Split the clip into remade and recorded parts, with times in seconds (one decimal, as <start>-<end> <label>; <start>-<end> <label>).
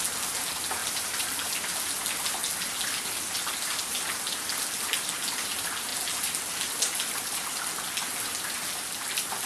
0.0-0.8 recorded; 0.8-1.3 remade; 1.3-9.5 recorded